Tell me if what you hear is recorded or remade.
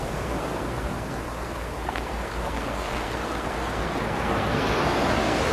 remade